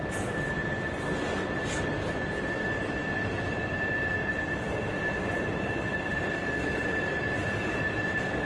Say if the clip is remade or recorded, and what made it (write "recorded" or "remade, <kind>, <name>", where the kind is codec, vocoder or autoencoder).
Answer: remade, vocoder, BigVGAN v2